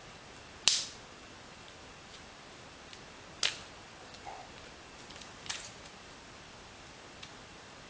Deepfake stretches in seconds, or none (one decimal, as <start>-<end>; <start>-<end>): none